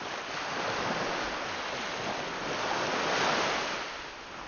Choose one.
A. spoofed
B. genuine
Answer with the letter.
B